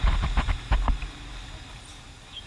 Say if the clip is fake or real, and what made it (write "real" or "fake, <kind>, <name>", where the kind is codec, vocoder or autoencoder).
real